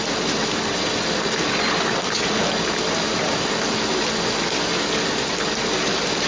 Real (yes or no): yes